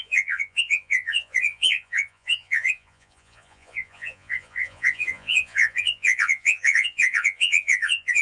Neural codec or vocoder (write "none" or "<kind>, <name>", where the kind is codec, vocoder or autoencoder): vocoder, Vocos